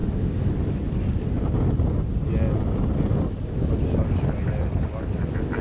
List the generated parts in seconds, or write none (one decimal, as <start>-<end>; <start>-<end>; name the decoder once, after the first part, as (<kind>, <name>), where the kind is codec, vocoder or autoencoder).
0.0-0.5 (autoencoder, DAC-VAE)

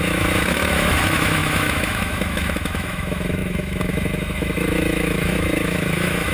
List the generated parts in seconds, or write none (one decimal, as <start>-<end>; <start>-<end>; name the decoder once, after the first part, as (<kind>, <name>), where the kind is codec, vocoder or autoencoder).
0.0-6.3 (autoencoder, DAC-VAE)

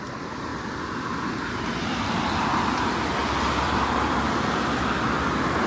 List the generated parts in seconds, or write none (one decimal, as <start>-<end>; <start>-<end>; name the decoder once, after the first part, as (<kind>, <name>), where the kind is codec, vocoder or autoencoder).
none

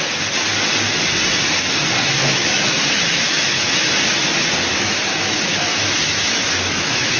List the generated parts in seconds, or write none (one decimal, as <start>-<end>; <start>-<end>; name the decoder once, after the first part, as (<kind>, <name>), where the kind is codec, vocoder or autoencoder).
2.2-3.9 (autoencoder, DAC-VAE); 4.7-7.2

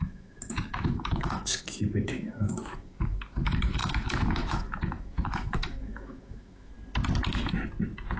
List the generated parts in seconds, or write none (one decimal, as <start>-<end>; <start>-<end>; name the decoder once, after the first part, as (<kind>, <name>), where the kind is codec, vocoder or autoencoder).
0.0-6.7 (autoencoder, DAC-VAE)

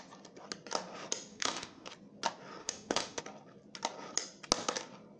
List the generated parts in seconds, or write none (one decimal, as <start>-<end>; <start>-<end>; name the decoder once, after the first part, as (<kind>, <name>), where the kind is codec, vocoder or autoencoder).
1.3-1.9 (autoencoder, DAC-VAE); 2.6-3.2

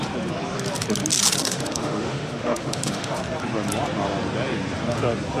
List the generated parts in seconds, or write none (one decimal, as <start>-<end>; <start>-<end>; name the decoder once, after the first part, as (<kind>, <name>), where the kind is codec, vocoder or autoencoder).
1.4-3.2 (autoencoder, DAC-VAE)

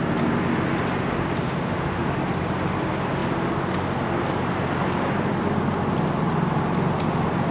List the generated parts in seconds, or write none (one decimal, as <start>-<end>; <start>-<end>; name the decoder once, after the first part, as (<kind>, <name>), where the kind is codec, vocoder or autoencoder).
1.4-2.1 (autoencoder, DAC-VAE)